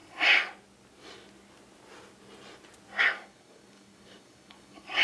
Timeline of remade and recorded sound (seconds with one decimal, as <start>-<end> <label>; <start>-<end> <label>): 0.0-3.0 recorded; 3.0-5.0 remade